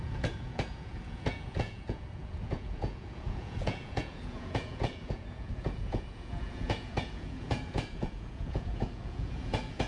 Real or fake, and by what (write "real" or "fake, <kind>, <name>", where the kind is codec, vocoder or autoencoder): fake, vocoder, Vocos